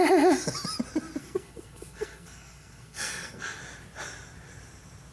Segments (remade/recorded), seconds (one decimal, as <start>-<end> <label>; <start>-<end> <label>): 0.0-1.2 recorded; 1.2-3.6 remade; 3.6-5.1 recorded

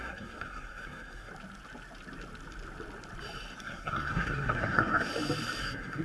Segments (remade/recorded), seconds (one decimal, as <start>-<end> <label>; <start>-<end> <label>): 0.0-1.3 remade; 1.3-3.6 recorded; 3.6-5.1 remade; 5.1-5.6 recorded; 5.6-6.0 remade

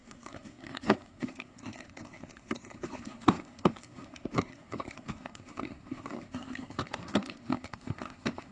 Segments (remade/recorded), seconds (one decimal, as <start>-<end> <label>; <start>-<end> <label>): 0.0-8.5 remade

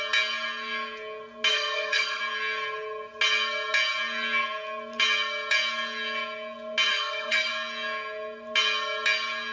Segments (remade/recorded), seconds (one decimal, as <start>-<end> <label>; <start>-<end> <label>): 0.0-1.5 recorded; 1.5-2.2 remade; 2.2-6.9 recorded; 6.9-7.5 remade; 7.5-9.5 recorded